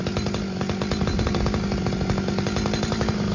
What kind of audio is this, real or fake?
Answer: real